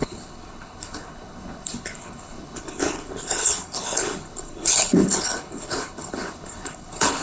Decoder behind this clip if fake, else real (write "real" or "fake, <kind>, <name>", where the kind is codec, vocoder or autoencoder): fake, codec, HILCodec